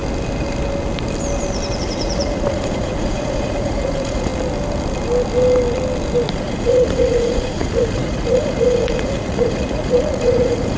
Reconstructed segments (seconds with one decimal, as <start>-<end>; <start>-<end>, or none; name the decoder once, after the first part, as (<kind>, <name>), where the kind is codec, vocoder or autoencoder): 1.8-4.3 (vocoder, Vocos); 6.3-10.8

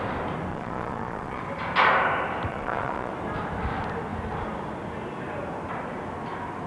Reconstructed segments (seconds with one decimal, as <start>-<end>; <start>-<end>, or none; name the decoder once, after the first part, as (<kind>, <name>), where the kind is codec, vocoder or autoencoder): 0.5-1.4 (vocoder, Vocos); 2.5-3.1

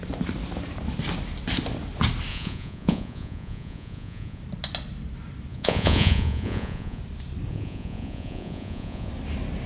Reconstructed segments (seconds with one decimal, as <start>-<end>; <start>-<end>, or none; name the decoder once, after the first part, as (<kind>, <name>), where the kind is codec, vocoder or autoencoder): 2.3-4.4 (vocoder, Vocos); 5.5-7.0; 7.5-9.1

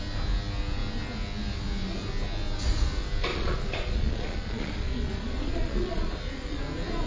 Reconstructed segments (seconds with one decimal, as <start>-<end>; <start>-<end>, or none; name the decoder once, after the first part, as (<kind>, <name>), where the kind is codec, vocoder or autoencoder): 3.3-6.6 (vocoder, Vocos)

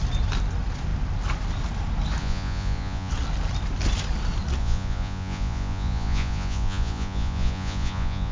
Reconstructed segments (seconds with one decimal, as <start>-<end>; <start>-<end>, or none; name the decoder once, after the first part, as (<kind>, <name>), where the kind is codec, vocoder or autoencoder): 2.2-3.1 (vocoder, Vocos); 4.6-8.3